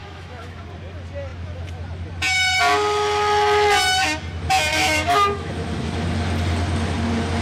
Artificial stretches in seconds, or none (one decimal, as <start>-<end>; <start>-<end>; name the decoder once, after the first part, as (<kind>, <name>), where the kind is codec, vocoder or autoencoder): 0.0-0.6 (autoencoder, DAC-VAE); 4.7-5.5

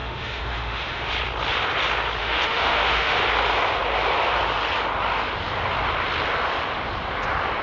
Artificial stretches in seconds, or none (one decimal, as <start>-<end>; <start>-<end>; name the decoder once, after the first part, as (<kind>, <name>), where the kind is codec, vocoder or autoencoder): 0.0-1.1 (autoencoder, DAC-VAE); 2.2-3.2

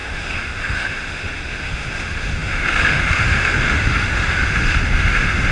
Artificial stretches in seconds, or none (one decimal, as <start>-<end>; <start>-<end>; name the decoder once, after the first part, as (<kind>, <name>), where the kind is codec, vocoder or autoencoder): 0.0-5.5 (autoencoder, DAC-VAE)

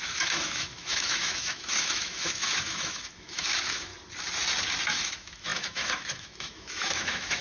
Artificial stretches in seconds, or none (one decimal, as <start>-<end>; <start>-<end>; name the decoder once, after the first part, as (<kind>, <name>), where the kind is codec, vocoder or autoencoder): 0.0-3.9 (autoencoder, DAC-VAE); 4.9-7.4

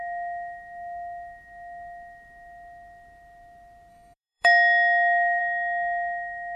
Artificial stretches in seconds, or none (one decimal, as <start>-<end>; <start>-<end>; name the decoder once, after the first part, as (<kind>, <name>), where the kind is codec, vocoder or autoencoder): 3.9-5.4 (autoencoder, DAC-VAE)

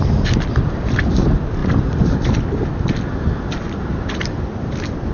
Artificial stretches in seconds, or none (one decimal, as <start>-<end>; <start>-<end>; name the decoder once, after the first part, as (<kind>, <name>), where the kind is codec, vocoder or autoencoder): none

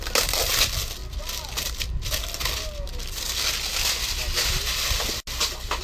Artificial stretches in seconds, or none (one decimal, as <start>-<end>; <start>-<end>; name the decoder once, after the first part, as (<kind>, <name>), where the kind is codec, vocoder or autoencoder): none